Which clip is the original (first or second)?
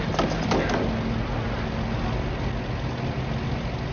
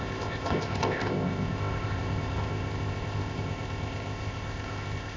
first